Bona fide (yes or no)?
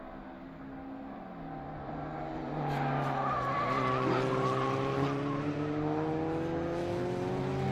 yes